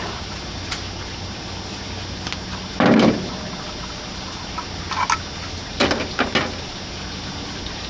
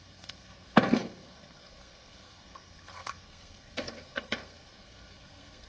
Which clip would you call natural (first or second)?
first